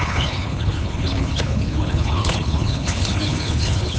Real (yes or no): no